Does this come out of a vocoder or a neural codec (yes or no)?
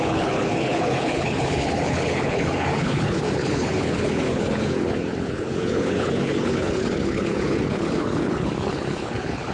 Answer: yes